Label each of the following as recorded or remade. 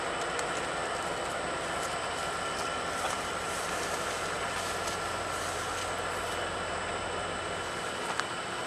recorded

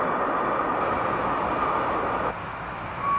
recorded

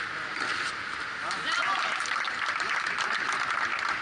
recorded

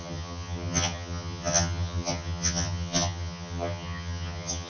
remade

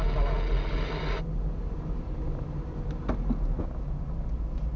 recorded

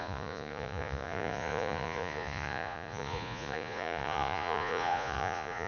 remade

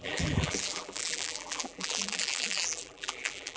remade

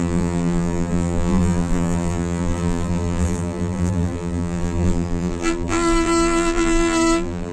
remade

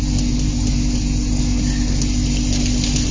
recorded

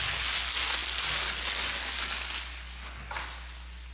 recorded